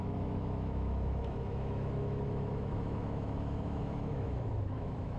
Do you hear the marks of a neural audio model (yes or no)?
yes